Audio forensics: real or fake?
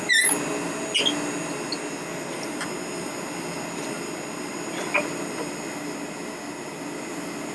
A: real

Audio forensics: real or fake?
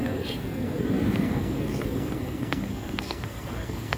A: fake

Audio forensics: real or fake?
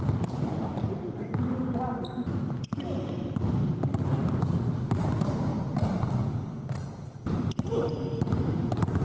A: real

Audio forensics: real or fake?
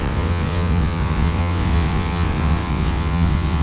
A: fake